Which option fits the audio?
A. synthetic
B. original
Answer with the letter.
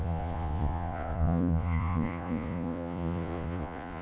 A